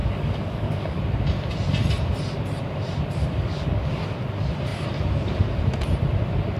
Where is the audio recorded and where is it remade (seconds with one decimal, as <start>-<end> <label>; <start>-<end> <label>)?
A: 0.0-1.0 remade; 1.0-3.2 recorded; 3.2-4.0 remade; 4.0-6.6 recorded